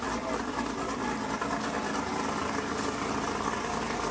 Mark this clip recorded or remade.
recorded